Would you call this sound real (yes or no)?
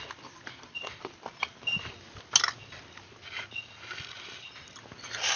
yes